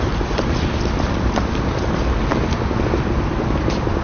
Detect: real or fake real